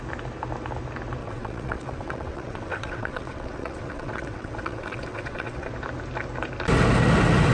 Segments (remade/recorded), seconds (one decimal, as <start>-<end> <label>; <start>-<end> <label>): 0.0-1.2 recorded; 1.2-5.7 remade; 5.7-7.5 recorded